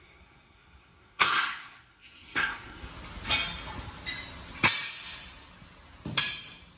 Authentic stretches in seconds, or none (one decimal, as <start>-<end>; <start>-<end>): 2.9-6.8